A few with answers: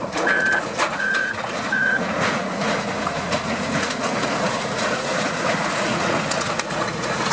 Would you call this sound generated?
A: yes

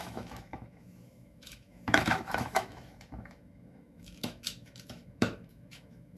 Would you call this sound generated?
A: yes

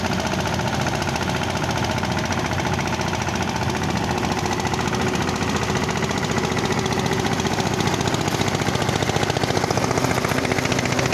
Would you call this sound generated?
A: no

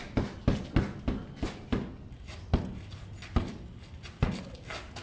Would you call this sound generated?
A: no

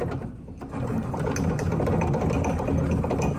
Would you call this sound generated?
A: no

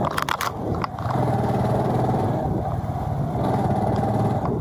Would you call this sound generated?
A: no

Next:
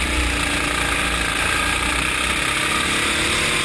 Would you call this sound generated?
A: no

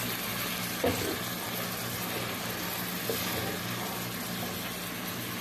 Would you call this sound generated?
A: no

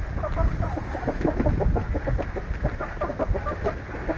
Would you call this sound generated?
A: no